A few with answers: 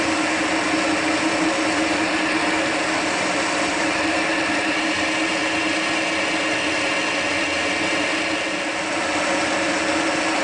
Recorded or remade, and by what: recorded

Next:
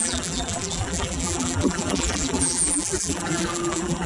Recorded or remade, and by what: remade, vocoder, BigVGAN v2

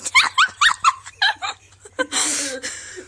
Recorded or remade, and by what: recorded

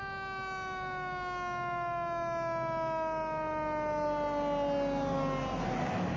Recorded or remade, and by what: recorded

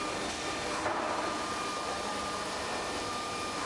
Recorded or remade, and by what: remade, vocoder, BigVGAN v2